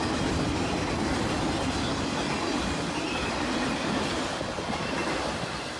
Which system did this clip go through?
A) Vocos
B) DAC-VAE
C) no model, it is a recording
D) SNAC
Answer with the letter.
C